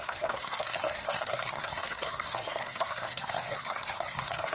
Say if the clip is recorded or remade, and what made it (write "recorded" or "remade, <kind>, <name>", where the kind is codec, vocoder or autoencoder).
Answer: remade, codec, SNAC